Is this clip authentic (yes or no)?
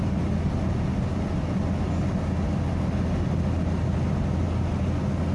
yes